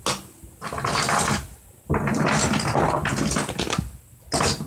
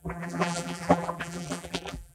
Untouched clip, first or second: first